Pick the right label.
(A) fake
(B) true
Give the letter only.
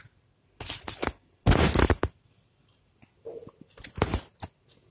B